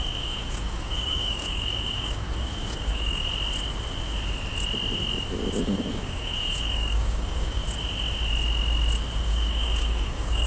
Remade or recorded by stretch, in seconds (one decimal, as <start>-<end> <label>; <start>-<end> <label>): 0.0-3.2 remade; 3.2-5.6 recorded; 5.6-7.6 remade; 7.6-9.2 recorded; 9.2-10.5 remade